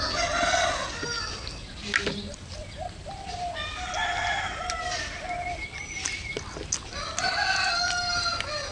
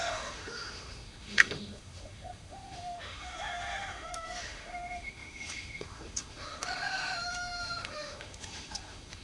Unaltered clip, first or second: first